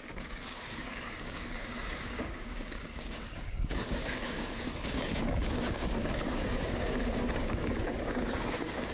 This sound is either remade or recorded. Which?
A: remade